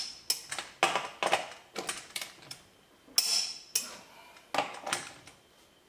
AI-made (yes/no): no